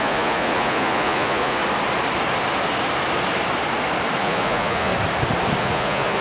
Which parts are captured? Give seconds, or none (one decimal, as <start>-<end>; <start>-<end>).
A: 1.6-4.2; 4.9-5.6